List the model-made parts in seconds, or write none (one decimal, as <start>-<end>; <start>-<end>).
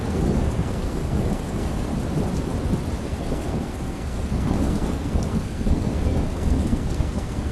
0.0-1.9; 3.0-7.5